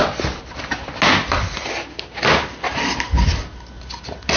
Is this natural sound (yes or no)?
yes